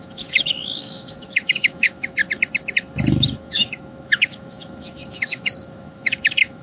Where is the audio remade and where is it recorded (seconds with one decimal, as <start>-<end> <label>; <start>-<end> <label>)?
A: 0.0-2.2 remade; 2.2-3.4 recorded; 3.4-6.6 remade